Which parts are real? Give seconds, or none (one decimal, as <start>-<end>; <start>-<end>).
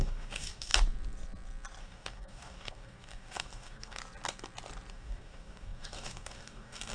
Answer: 0.7-1.8; 4.0-4.9